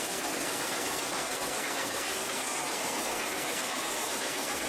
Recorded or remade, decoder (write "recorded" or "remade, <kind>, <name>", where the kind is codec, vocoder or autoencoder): remade, codec, SNAC